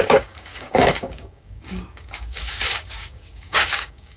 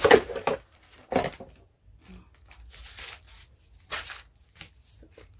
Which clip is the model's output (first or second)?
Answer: first